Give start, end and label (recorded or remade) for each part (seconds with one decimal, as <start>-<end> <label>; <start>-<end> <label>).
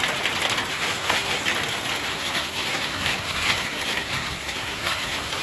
0.0-0.7 recorded; 0.7-1.4 remade; 1.4-2.1 recorded; 2.1-5.4 remade